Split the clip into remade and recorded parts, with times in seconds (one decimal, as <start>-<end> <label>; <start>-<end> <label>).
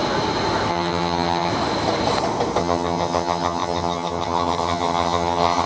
0.0-0.7 recorded; 0.7-1.5 remade; 1.5-2.6 recorded; 2.6-5.7 remade